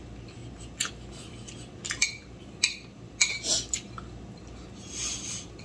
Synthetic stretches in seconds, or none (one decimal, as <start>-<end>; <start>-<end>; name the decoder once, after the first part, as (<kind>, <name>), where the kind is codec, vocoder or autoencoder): none